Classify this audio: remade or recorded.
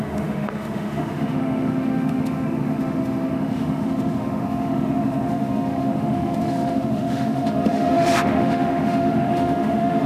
remade